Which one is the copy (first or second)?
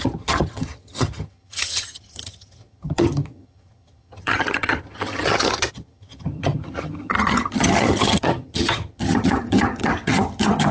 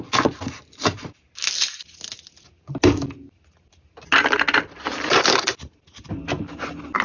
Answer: first